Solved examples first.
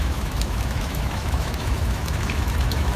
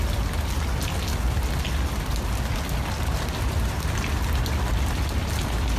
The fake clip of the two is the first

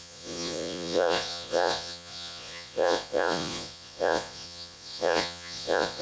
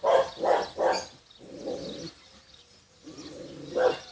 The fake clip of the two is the first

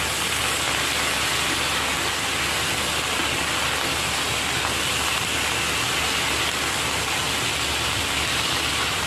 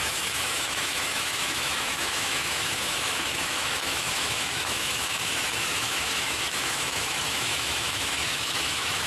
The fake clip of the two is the second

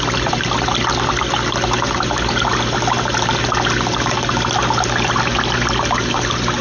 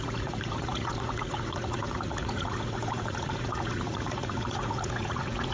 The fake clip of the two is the second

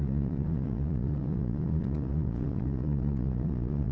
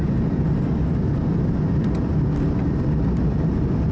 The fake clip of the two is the first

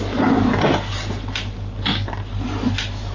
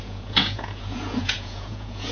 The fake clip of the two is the second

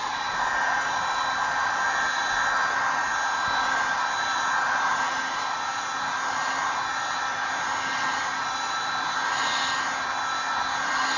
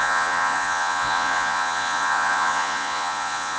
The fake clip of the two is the second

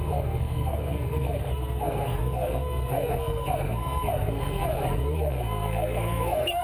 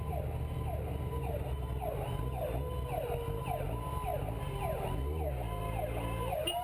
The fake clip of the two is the first